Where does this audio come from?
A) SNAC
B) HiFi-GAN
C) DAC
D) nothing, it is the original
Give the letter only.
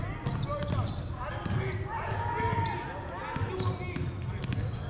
D